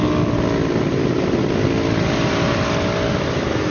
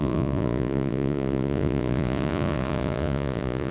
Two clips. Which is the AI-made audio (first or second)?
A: second